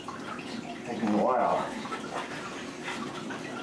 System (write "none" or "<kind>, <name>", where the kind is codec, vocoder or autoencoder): none